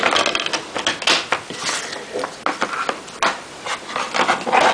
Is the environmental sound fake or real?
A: real